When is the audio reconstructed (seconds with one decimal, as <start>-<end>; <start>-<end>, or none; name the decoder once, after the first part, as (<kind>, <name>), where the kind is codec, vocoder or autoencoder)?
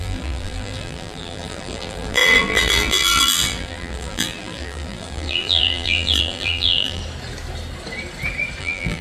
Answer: 0.0-7.0 (vocoder, BigVGAN v2); 8.6-9.0